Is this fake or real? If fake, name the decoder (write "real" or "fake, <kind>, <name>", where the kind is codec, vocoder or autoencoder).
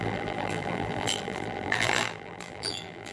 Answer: fake, vocoder, BigVGAN v2